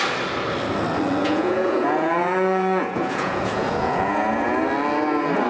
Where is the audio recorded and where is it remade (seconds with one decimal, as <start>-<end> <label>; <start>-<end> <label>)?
0.0-1.2 recorded; 1.2-4.5 remade; 4.5-5.5 recorded